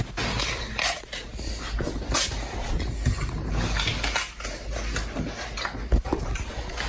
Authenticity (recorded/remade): recorded